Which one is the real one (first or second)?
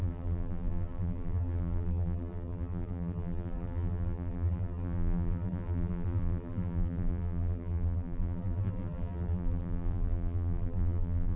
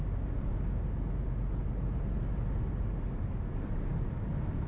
second